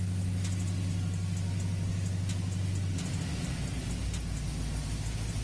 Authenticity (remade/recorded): recorded